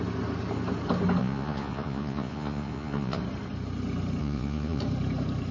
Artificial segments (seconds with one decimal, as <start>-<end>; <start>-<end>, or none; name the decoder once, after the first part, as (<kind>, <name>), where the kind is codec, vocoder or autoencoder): 1.2-3.2 (vocoder, Vocos); 4.2-4.8